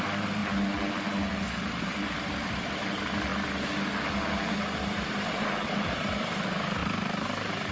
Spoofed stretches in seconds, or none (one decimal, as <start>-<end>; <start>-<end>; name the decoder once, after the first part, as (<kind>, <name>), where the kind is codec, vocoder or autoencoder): 0.0-0.4 (vocoder, BigVGAN v2); 1.8-3.3; 4.5-7.7